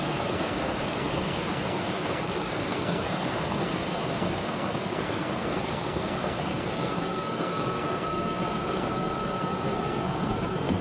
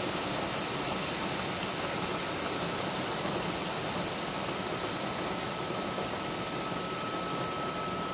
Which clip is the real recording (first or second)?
second